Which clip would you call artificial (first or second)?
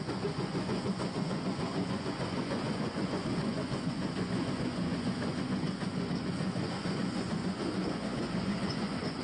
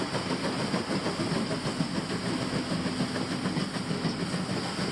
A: first